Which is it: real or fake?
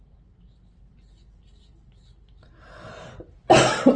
real